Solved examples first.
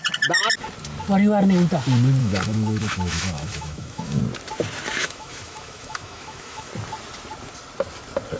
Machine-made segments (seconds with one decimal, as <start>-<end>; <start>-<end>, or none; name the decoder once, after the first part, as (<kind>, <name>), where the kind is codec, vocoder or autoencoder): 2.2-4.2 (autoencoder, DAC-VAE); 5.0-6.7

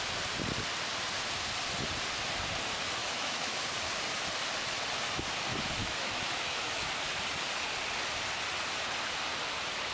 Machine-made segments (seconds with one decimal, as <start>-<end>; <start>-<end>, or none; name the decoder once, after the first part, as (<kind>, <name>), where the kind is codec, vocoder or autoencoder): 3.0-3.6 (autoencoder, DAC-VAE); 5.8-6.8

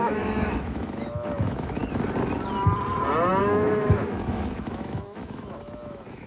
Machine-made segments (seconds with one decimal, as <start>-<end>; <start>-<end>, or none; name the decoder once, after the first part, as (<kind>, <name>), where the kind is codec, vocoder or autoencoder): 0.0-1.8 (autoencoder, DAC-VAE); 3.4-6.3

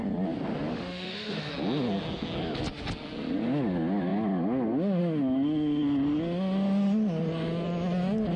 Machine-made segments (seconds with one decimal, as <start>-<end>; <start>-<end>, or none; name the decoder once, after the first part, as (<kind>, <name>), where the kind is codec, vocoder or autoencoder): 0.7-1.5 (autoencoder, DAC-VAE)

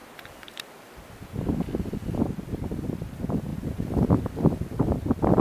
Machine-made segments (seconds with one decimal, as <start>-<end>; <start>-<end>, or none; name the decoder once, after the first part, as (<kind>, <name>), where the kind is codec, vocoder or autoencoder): none